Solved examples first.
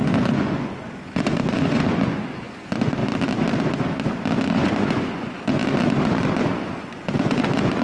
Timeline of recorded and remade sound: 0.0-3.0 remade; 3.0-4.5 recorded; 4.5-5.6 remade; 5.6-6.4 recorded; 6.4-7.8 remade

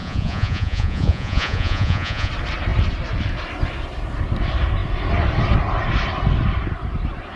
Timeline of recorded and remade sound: 0.0-2.3 remade; 2.3-7.4 recorded

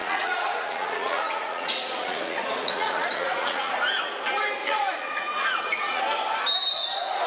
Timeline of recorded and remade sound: 0.0-3.7 remade; 3.7-4.6 recorded; 4.6-6.0 remade; 6.0-7.3 recorded